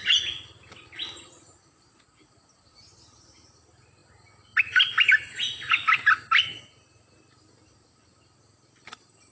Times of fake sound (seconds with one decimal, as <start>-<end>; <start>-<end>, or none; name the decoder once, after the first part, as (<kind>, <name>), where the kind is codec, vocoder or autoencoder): none